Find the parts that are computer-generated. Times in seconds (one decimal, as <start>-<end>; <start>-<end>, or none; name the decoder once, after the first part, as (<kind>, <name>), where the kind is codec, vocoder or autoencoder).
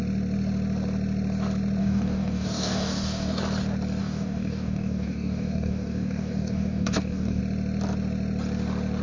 1.8-3.4 (codec, DAC); 4.0-7.4